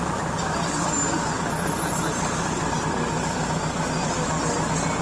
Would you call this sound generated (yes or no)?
no